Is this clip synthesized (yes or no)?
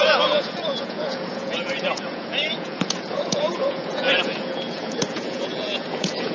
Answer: yes